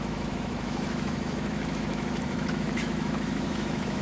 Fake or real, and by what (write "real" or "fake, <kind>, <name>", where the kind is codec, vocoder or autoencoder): fake, autoencoder, DAC-VAE